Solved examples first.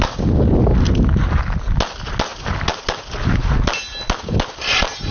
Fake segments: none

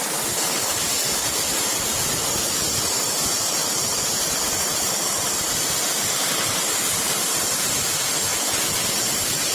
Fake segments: 1.2-2.8 (vocoder, BigVGAN v2); 3.7-5.7

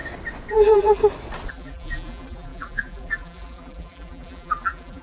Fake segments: 0.5-1.0 (vocoder, BigVGAN v2); 1.5-5.0

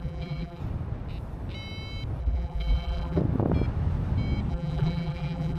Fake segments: 0.0-0.6 (vocoder, BigVGAN v2); 2.2-3.2; 4.5-5.6

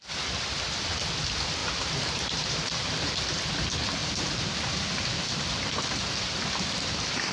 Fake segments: 1.6-3.5 (vocoder, BigVGAN v2); 4.0-5.5